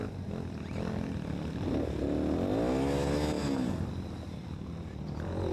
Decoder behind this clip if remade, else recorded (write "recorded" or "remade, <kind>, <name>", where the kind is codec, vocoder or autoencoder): recorded